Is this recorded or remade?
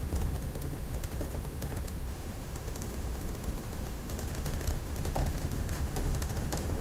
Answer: remade